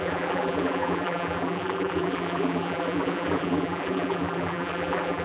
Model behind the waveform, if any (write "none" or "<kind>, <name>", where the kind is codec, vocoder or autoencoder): vocoder, BigVGAN v2